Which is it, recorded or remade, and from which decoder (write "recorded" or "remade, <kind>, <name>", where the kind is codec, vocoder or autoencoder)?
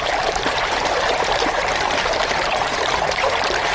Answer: remade, vocoder, BigVGAN v2